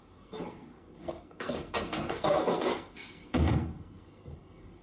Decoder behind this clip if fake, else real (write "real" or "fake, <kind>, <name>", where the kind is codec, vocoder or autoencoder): fake, codec, SNAC